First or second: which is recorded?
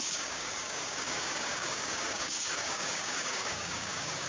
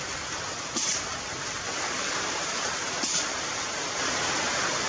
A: second